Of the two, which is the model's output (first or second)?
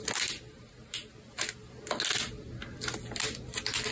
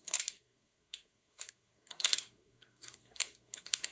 second